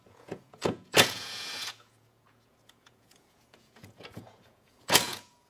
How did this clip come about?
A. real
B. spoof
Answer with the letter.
B